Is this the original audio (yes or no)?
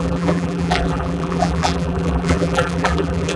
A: no